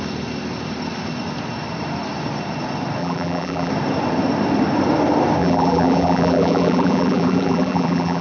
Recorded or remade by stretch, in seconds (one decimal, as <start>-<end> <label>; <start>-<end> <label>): 0.0-3.0 recorded; 3.0-3.7 remade; 3.7-5.4 recorded; 5.4-8.2 remade